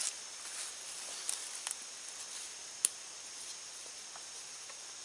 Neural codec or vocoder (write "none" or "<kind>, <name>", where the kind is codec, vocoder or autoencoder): none